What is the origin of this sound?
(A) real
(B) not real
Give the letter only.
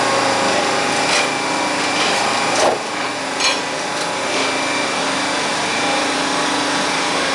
A